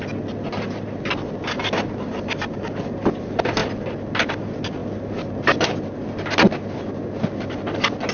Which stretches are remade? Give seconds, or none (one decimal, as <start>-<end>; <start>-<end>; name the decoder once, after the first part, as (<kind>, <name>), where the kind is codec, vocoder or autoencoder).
none